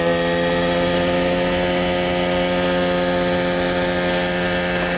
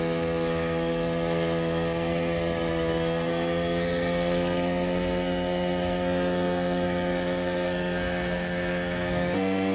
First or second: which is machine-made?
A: second